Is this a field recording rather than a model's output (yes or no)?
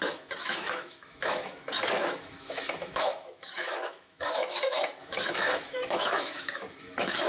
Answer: no